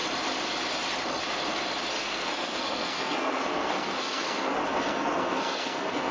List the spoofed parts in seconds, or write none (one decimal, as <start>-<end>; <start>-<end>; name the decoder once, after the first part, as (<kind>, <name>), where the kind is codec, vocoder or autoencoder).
1.9-6.1 (codec, SNAC)